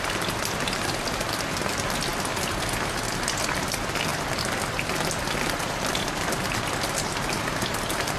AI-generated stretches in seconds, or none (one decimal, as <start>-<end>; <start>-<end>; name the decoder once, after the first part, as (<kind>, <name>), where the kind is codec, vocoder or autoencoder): none